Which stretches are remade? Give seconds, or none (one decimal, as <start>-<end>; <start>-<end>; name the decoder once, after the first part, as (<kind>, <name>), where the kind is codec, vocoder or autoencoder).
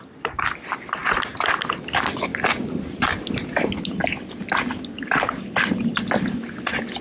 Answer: none